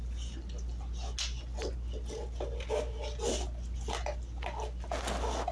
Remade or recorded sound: recorded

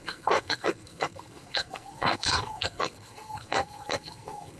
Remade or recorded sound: remade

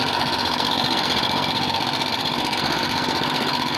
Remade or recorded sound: remade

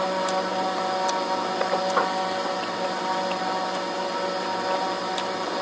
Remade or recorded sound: recorded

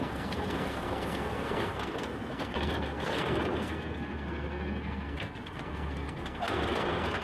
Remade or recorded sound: remade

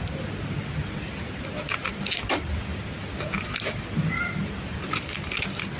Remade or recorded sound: recorded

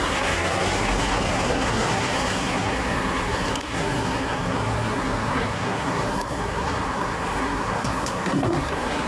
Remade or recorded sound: remade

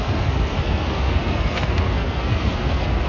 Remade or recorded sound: remade